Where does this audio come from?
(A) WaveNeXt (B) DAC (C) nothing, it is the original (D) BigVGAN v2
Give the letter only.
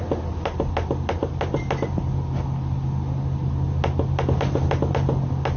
C